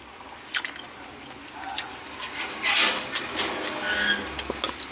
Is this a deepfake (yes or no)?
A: no